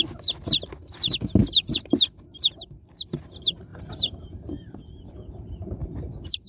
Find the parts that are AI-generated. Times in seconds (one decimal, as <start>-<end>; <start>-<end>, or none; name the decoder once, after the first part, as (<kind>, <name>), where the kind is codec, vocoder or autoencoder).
1.4-1.9 (vocoder, BigVGAN v2); 3.7-5.1; 5.8-6.5